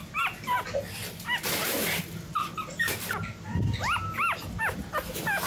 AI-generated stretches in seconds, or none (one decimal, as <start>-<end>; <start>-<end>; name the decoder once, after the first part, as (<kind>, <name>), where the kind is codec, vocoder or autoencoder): none